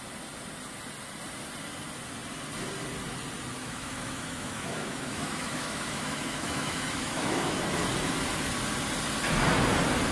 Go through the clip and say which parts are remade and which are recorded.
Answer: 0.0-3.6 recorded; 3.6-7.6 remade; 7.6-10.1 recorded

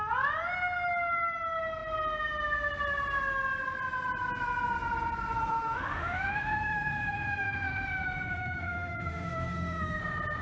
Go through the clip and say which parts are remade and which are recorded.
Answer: 0.0-5.4 recorded; 5.4-10.0 remade; 10.0-10.4 recorded

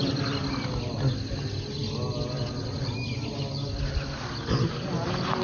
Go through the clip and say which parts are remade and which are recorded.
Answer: 0.0-5.4 recorded